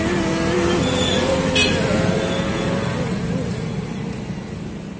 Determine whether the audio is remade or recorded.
recorded